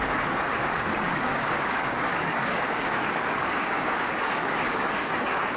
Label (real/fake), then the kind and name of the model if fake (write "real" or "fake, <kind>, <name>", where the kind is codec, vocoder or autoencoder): fake, codec, DAC